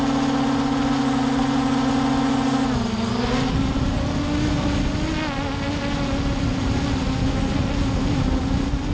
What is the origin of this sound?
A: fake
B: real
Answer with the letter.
B